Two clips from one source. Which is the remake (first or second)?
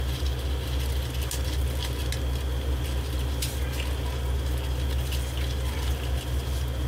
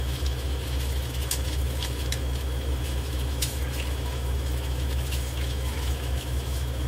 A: second